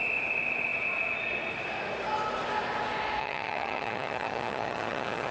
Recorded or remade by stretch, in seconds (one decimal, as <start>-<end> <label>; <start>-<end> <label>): 0.0-3.2 recorded; 3.2-5.3 remade